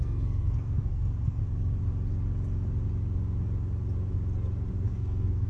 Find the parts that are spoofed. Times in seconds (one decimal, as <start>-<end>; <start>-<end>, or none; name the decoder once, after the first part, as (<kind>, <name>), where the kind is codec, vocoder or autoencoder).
0.0-1.4 (codec, SNAC); 4.7-5.5